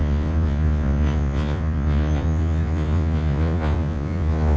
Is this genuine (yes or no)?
no